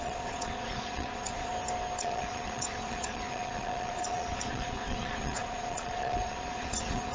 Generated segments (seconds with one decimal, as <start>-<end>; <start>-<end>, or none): 0.0-1.5; 2.0-7.1